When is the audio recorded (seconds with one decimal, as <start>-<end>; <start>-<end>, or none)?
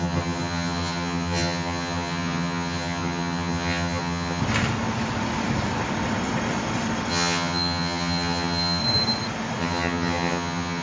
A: 4.4-7.1; 8.8-9.6